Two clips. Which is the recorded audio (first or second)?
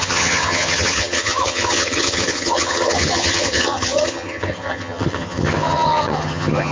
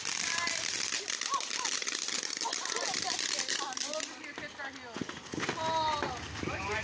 second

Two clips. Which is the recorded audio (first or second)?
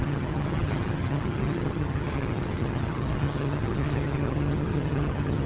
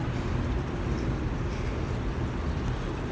second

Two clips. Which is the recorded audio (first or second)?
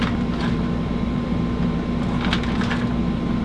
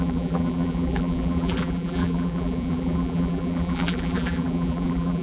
first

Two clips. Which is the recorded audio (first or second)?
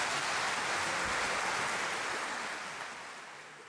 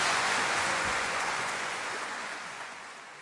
first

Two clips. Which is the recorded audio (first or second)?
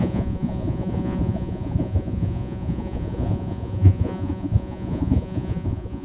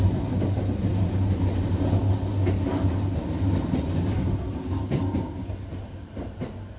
second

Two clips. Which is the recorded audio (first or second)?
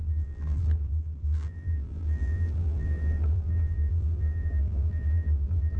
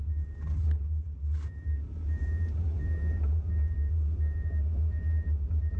second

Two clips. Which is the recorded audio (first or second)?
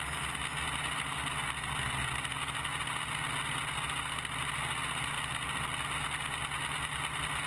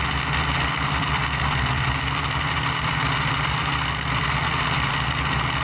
first